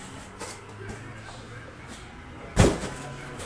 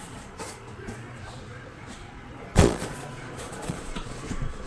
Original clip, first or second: first